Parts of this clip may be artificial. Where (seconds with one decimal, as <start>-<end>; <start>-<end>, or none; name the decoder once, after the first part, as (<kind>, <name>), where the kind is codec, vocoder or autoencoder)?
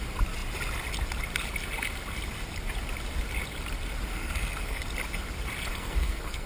4.1-4.8 (codec, SNAC); 5.7-6.5